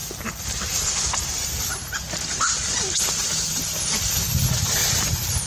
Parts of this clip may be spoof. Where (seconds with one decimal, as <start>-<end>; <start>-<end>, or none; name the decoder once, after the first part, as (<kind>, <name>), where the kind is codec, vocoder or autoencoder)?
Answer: 4.8-5.5 (vocoder, BigVGAN v2)